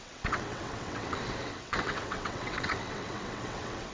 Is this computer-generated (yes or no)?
yes